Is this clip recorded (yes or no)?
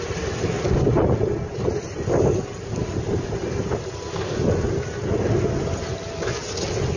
yes